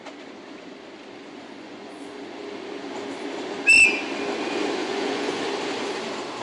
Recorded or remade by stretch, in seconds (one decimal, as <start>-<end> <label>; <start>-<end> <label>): 0.0-1.2 recorded; 1.2-2.4 remade; 2.4-4.8 recorded; 4.8-5.4 remade; 5.4-6.4 recorded